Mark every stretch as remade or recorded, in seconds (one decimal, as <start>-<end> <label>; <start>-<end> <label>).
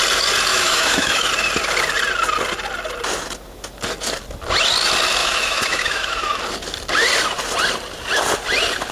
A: 0.0-0.5 recorded; 0.5-1.3 remade; 1.3-5.2 recorded; 5.2-6.4 remade; 6.4-8.9 recorded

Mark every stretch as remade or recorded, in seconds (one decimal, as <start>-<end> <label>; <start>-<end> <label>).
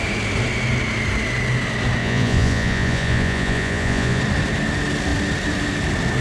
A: 0.0-2.0 recorded; 2.0-4.2 remade; 4.2-6.2 recorded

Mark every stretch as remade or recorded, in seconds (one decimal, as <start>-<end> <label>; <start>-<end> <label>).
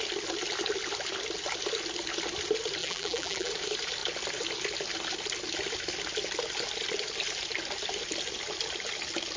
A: 0.0-2.8 recorded; 2.8-3.5 remade; 3.5-9.4 recorded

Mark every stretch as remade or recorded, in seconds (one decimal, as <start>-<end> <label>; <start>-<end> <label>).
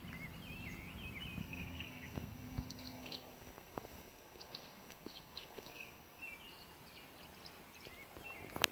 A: 0.0-1.4 recorded; 1.4-6.2 remade; 6.2-8.7 recorded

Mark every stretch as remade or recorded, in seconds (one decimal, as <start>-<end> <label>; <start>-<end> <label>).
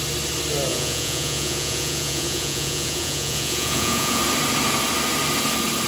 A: 0.0-0.7 recorded; 0.7-4.2 remade; 4.2-5.9 recorded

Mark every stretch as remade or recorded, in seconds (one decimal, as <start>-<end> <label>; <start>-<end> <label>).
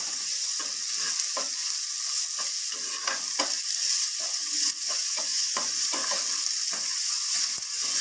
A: 0.0-0.6 remade; 0.6-4.0 recorded; 4.0-6.0 remade; 6.0-6.7 recorded; 6.7-8.0 remade